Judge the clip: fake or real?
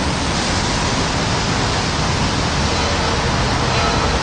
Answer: real